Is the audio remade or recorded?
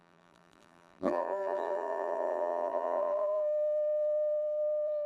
remade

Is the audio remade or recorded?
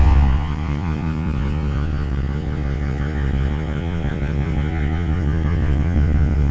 remade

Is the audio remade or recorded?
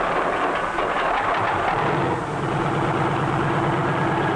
recorded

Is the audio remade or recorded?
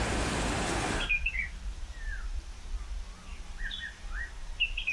recorded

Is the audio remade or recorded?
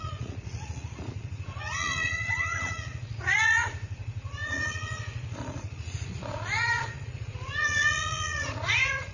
remade